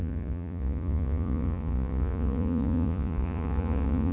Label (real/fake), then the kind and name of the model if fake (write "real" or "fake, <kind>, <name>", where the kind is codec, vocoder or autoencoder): fake, vocoder, Vocos